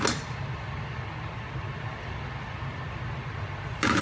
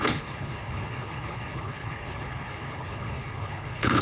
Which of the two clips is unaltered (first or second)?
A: first